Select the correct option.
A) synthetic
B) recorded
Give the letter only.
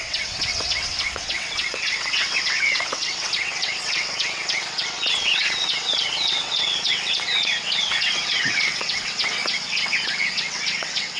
A